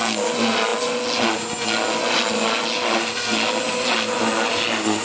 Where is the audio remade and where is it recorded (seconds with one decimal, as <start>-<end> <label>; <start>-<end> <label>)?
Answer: 0.0-5.0 recorded